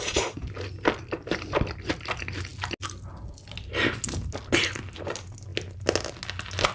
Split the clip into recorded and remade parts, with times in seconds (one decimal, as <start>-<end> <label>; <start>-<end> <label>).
0.0-6.7 recorded